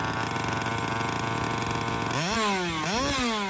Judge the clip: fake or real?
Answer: real